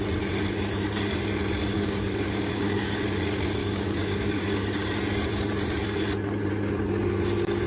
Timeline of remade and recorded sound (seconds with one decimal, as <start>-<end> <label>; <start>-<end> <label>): 0.0-1.7 recorded; 1.7-3.0 remade; 3.0-3.6 recorded; 3.6-4.4 remade; 4.4-7.7 recorded